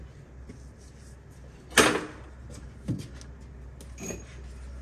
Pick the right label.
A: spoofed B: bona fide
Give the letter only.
B